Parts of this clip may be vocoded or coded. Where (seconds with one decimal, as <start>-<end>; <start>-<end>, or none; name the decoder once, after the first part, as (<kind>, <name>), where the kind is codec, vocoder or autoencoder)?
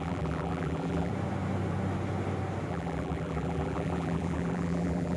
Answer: 0.0-1.1 (vocoder, BigVGAN v2); 2.7-5.2